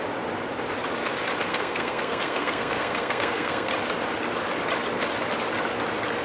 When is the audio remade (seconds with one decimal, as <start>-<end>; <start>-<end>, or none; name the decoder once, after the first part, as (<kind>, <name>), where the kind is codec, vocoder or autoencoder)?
1.5-3.7 (codec, SNAC)